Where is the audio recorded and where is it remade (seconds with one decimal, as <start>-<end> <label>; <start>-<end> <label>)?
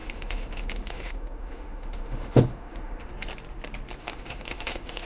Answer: 0.0-3.1 remade; 3.1-4.0 recorded; 4.0-5.1 remade